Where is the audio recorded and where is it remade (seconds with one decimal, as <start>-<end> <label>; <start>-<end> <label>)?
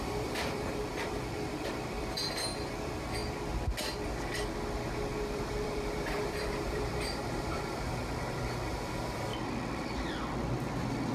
0.0-3.2 remade; 3.2-5.2 recorded; 5.2-8.0 remade; 8.0-8.7 recorded; 8.7-11.1 remade